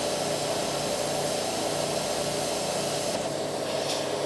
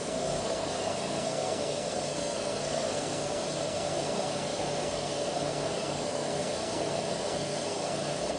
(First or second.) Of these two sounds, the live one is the first